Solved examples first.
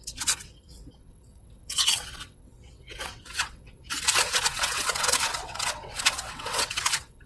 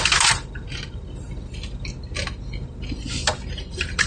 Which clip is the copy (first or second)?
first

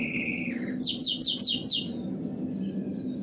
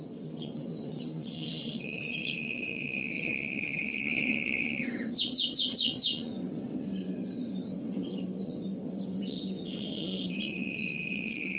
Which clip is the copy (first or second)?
second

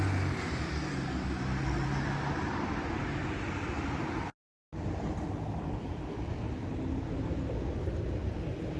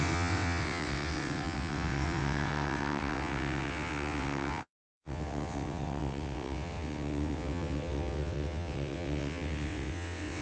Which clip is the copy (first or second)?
second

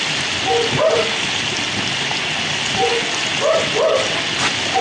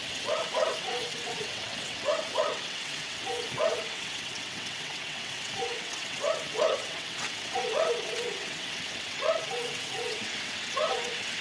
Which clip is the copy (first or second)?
second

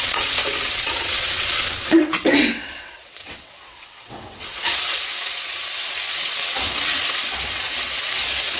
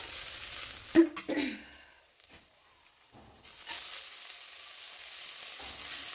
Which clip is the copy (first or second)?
first